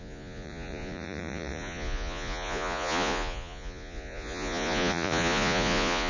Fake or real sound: fake